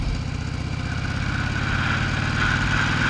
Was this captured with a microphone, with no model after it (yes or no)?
yes